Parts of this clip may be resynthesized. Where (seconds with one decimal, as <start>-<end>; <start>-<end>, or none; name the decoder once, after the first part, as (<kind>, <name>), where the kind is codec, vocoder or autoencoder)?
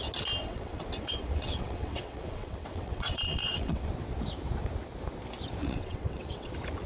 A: 0.4-3.9 (vocoder, WaveNeXt); 5.6-6.5